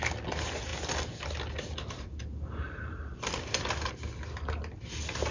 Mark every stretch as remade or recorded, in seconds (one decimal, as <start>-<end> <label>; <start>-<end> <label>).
0.0-5.3 recorded